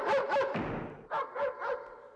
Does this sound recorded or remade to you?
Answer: recorded